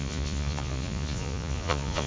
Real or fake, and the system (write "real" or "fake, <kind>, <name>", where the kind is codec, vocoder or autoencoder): fake, vocoder, Vocos